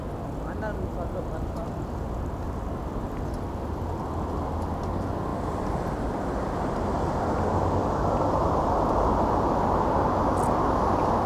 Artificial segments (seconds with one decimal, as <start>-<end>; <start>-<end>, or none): 5.3-6.8